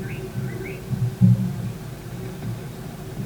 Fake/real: real